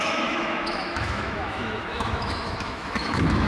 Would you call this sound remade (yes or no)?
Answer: yes